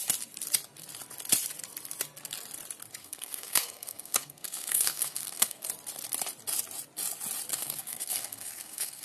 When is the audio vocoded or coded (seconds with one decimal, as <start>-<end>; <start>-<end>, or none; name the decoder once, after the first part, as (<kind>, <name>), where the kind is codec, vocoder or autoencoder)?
3.0-5.7 (codec, SNAC); 7.5-9.0